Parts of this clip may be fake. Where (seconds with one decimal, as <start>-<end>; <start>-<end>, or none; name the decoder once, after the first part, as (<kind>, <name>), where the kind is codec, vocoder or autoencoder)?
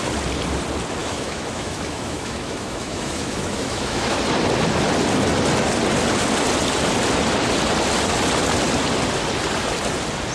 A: 1.0-4.2 (autoencoder, DAC-VAE)